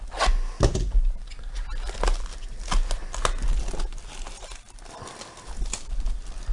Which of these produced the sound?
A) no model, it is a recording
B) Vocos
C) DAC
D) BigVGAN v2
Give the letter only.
A